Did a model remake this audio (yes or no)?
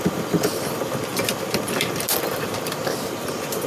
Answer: no